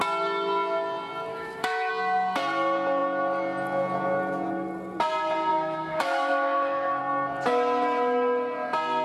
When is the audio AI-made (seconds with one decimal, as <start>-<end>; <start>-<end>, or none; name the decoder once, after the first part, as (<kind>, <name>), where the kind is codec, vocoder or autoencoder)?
1.3-1.9 (autoencoder, DAC-VAE); 5.5-7.0